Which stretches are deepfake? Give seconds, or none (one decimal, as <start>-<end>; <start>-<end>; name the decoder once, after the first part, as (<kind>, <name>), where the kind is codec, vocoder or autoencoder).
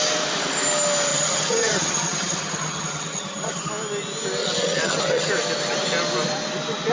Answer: 1.1-3.7 (vocoder, HiFi-GAN); 4.4-5.3